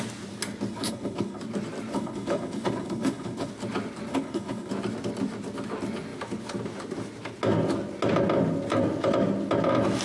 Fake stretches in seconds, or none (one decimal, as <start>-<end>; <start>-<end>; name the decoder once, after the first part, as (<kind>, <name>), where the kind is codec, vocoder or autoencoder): 0.7-1.4 (codec, HILCodec); 1.9-3.5; 4.1-4.7